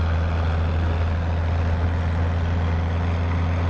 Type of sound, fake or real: real